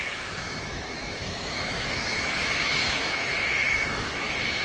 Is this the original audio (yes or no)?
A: no